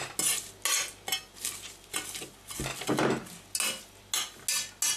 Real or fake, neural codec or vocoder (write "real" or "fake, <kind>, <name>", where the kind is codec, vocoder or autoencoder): real